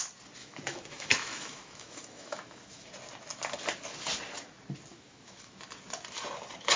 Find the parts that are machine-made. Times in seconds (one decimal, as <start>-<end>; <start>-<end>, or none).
0.4-2.9; 4.9-5.6